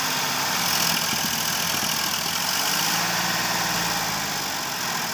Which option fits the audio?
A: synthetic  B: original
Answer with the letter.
B